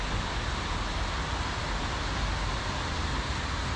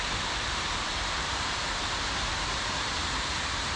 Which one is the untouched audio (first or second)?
first